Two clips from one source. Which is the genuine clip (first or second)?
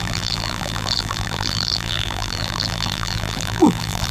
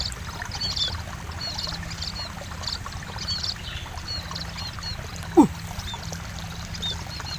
second